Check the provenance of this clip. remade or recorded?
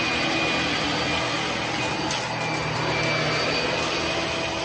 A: recorded